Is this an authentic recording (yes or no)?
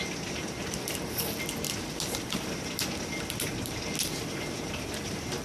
yes